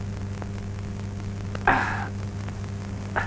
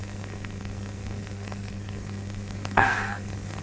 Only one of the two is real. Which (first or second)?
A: first